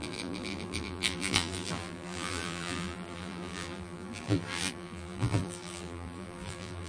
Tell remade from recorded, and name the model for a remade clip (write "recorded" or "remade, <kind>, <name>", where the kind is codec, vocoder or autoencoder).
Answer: remade, vocoder, BigVGAN v2